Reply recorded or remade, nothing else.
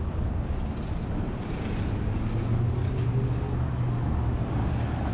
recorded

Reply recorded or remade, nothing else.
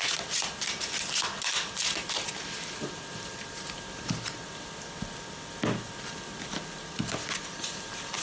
recorded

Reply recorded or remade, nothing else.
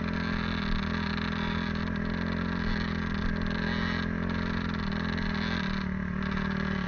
recorded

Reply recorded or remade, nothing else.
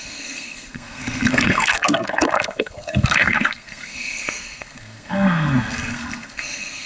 remade